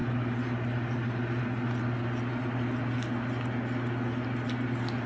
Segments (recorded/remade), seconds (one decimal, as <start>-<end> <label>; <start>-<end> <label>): 0.0-5.1 recorded